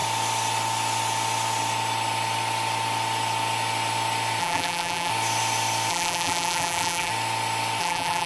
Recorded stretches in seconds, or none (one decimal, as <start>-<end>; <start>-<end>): 0.0-4.4; 5.1-5.9; 7.1-7.8